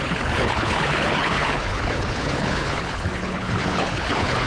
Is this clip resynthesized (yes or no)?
yes